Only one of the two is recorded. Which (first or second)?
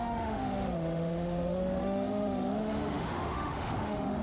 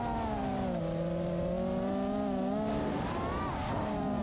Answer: second